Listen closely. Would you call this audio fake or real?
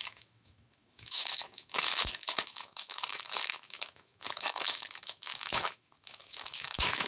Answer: fake